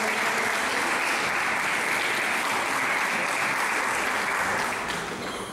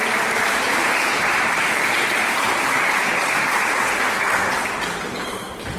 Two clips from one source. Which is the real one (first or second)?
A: first